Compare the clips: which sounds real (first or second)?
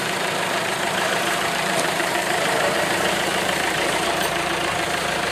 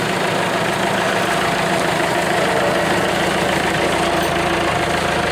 second